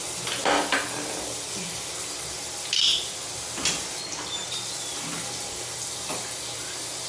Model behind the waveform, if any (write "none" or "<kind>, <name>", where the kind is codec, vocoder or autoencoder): none